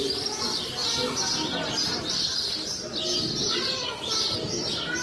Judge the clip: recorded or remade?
recorded